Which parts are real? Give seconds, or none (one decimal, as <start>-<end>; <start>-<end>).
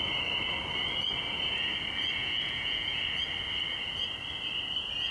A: 0.0-2.2; 3.0-5.1